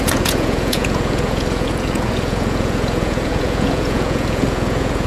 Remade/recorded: remade